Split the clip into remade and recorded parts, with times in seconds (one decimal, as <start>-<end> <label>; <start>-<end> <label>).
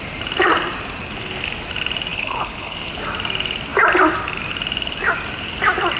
0.0-2.1 recorded; 2.1-2.9 remade; 2.9-6.0 recorded